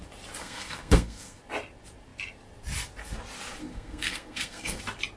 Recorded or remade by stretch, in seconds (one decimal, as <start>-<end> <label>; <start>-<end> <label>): 0.0-0.4 recorded; 0.4-1.4 remade; 1.4-3.6 recorded; 3.6-4.8 remade; 4.8-5.2 recorded